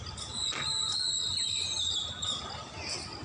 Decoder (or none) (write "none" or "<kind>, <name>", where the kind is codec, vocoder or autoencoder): none